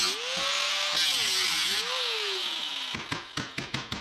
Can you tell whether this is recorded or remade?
recorded